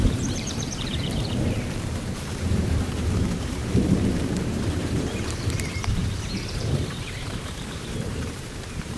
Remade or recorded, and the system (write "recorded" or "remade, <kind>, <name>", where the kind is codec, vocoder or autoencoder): remade, vocoder, BigVGAN v2